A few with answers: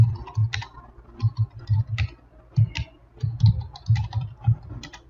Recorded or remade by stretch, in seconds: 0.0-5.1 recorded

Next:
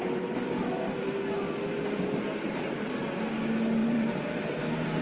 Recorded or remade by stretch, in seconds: 0.0-3.8 recorded; 3.8-4.6 remade; 4.6-5.0 recorded